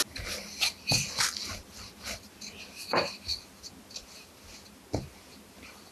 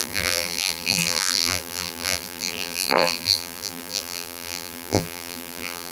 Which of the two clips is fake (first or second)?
second